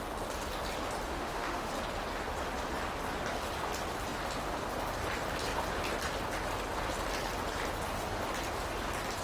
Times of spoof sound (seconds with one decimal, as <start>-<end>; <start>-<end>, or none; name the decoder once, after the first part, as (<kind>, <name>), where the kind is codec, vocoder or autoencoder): 1.1-1.7 (autoencoder, DAC-VAE)